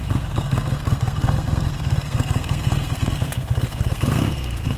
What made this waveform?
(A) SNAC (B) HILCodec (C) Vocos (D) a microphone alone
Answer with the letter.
A